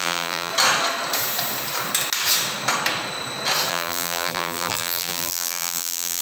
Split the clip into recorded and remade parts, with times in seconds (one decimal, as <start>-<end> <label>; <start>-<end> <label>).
0.0-0.5 remade; 0.5-3.7 recorded; 3.7-6.2 remade